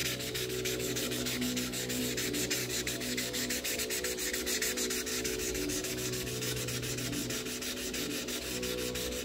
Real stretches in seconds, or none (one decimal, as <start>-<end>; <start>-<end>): 2.0-2.6; 3.8-5.1; 6.6-9.2